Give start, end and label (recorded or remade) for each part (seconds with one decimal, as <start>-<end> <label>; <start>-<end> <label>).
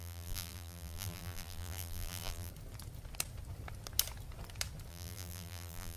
0.0-2.5 remade; 2.5-4.9 recorded; 4.9-6.0 remade